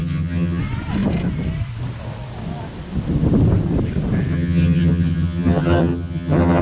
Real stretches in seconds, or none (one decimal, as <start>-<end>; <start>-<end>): 0.6-4.3